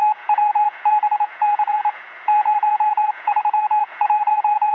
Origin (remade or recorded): remade